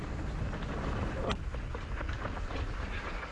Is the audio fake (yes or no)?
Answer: no